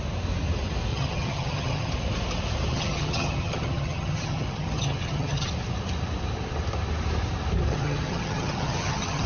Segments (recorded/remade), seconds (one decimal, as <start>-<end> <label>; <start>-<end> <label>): 0.0-0.9 recorded; 0.9-1.9 remade; 1.9-2.7 recorded; 2.7-5.5 remade; 5.5-7.7 recorded; 7.7-9.3 remade